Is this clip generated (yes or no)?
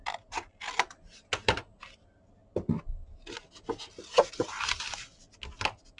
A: no